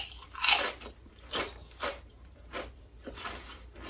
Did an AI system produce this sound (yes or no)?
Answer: yes